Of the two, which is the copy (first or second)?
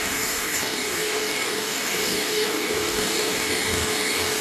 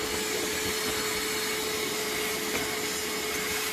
first